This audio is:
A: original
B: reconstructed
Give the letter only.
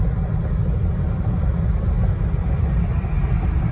A